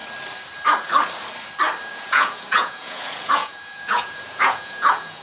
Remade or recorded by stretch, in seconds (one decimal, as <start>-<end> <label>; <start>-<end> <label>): 0.0-1.9 recorded; 1.9-5.2 remade